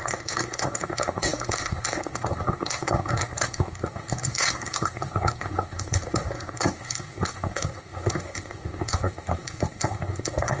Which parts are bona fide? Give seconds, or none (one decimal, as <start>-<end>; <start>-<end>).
none